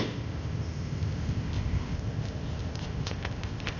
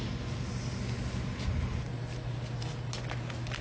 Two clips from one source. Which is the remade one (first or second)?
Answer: first